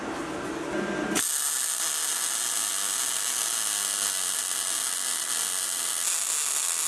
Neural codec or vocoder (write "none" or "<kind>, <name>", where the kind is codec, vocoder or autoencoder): none